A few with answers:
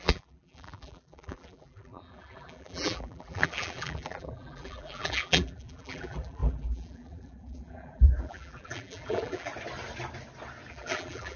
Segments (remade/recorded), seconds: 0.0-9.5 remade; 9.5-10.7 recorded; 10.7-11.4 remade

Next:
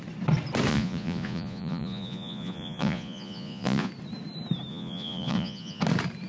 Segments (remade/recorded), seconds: 0.0-0.7 recorded; 0.7-3.9 remade; 3.9-4.7 recorded; 4.7-5.8 remade; 5.8-6.3 recorded

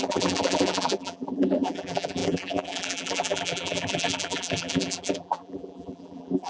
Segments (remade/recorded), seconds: 0.0-6.5 remade

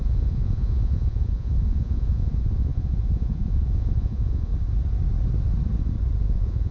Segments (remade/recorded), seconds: 0.0-4.5 remade; 4.5-6.2 recorded; 6.2-6.7 remade

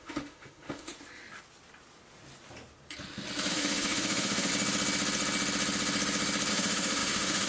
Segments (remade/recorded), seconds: 0.0-0.9 remade; 0.9-3.5 recorded; 3.5-4.5 remade; 4.5-6.5 recorded; 6.5-7.5 remade

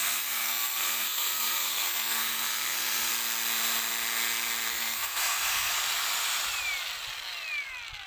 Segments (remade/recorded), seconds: 0.0-3.1 remade; 3.1-4.7 recorded; 4.7-5.7 remade; 5.7-8.1 recorded